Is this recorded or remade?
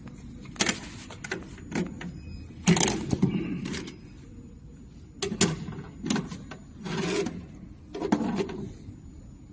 recorded